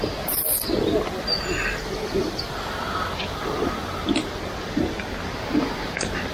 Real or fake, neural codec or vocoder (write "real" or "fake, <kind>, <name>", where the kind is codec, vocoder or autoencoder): real